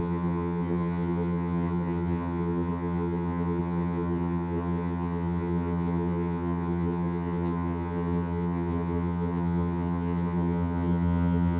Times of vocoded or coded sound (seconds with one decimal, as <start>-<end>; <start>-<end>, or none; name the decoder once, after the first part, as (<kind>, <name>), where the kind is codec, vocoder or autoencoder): 0.0-11.6 (vocoder, HiFi-GAN)